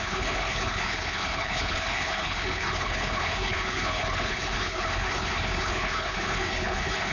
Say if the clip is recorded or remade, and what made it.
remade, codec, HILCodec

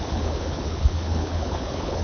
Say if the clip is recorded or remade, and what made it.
remade, codec, HILCodec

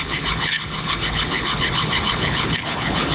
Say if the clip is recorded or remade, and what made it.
remade, codec, HILCodec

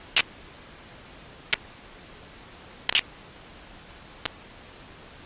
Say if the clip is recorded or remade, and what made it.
recorded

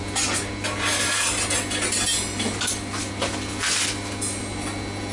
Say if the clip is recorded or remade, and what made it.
recorded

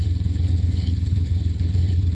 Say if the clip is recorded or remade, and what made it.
remade, codec, HILCodec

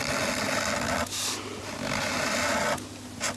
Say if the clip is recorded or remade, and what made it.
recorded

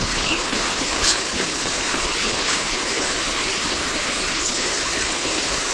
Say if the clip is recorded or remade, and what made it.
remade, codec, HILCodec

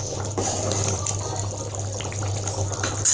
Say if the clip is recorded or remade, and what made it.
recorded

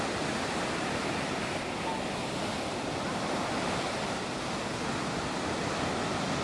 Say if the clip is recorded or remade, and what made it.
recorded